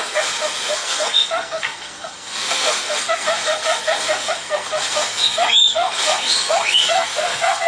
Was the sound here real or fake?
fake